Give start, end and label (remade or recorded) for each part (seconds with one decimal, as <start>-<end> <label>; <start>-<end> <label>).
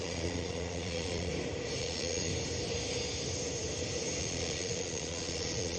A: 0.0-1.3 remade; 1.3-1.8 recorded; 1.8-2.3 remade; 2.3-4.2 recorded; 4.2-5.8 remade